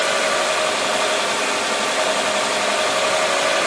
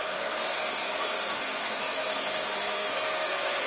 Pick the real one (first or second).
first